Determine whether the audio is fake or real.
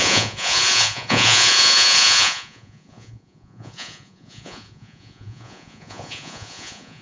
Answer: fake